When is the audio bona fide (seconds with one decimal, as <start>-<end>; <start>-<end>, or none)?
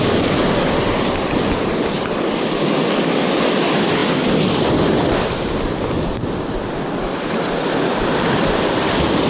4.0-6.0